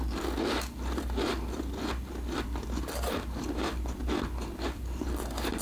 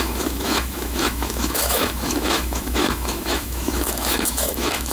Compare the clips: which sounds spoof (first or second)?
second